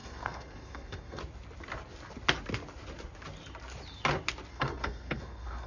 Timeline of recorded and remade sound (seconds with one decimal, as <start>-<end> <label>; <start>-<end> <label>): 0.0-1.2 remade; 1.2-4.5 recorded; 4.5-5.7 remade